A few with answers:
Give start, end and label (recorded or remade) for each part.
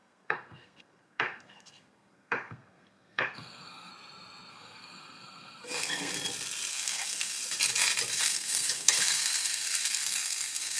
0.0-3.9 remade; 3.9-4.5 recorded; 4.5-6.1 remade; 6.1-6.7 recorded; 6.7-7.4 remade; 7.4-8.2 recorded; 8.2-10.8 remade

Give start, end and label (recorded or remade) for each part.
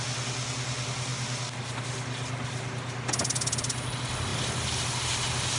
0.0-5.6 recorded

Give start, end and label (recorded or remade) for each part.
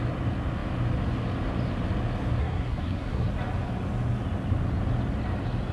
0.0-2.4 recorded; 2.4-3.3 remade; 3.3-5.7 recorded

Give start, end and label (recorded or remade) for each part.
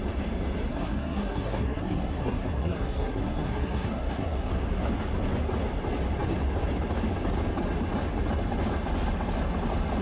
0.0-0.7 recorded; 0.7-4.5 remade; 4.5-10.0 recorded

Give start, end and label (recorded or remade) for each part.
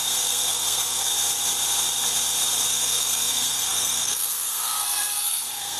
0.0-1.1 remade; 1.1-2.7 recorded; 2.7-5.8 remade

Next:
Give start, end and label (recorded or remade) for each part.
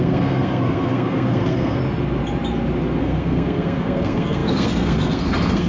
0.0-1.8 remade; 1.8-3.0 recorded; 3.0-5.7 remade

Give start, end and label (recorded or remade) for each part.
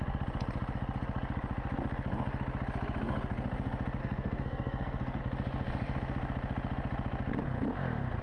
0.0-4.0 recorded; 4.0-5.2 remade; 5.2-8.2 recorded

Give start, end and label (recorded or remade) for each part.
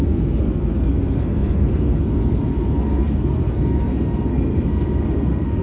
0.0-5.6 remade